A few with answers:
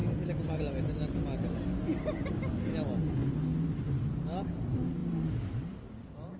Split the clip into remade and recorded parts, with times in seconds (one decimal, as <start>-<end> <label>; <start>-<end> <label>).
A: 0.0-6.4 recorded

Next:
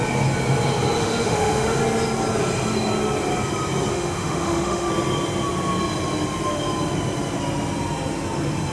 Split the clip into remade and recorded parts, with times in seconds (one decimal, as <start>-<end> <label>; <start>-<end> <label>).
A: 0.0-1.0 recorded; 1.0-1.8 remade; 1.8-3.9 recorded; 3.9-4.9 remade; 4.9-8.7 recorded

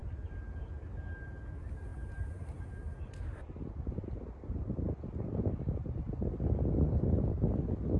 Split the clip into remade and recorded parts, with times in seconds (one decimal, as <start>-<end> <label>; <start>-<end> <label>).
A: 0.0-1.9 recorded; 1.9-6.1 remade; 6.1-8.0 recorded

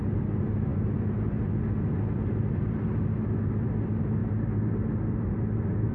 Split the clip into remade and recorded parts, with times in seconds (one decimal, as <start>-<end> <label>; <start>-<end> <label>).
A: 0.0-5.9 recorded

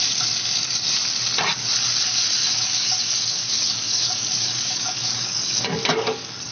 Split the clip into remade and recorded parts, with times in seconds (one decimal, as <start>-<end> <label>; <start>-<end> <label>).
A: 0.0-2.4 recorded; 2.4-6.5 remade

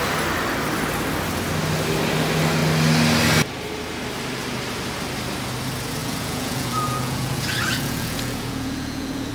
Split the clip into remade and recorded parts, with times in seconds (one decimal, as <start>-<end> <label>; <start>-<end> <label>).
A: 0.0-6.0 recorded; 6.0-9.3 remade

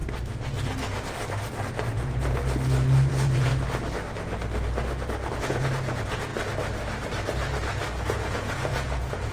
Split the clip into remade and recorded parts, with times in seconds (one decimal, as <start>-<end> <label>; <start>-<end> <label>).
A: 0.0-1.7 recorded; 1.7-2.4 remade; 2.4-3.1 recorded; 3.1-3.5 remade; 3.5-5.4 recorded; 5.4-6.3 remade; 6.3-7.9 recorded; 7.9-9.3 remade

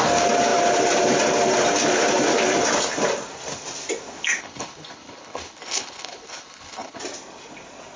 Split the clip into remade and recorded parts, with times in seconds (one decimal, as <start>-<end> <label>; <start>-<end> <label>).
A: 0.0-4.4 recorded; 4.4-7.0 remade; 7.0-8.0 recorded